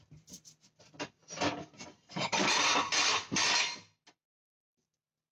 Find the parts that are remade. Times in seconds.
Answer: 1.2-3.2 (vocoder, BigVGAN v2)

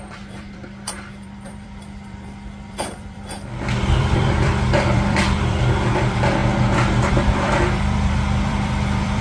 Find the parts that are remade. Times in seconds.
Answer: 0.0-3.5 (vocoder, BigVGAN v2); 4.0-6.4; 7.0-9.2

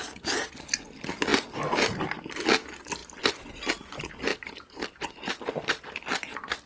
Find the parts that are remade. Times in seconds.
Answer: 4.3-5.3 (vocoder, BigVGAN v2)

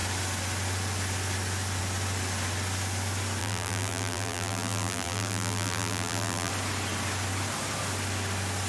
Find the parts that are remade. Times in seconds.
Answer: 3.4-6.5 (vocoder, BigVGAN v2)